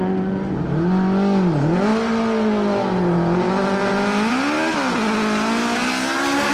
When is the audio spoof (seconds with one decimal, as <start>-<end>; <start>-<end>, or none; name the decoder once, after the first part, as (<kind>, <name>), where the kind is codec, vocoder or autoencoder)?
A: none